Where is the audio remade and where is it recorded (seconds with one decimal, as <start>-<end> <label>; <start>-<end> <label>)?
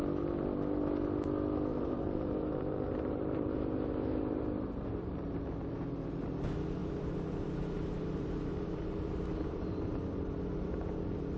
0.0-1.7 recorded; 1.7-5.4 remade; 5.4-6.8 recorded; 6.8-9.9 remade; 9.9-11.4 recorded